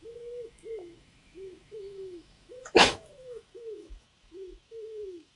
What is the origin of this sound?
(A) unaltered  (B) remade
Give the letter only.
B